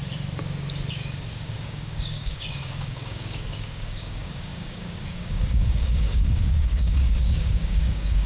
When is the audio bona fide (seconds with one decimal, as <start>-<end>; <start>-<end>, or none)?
0.0-0.9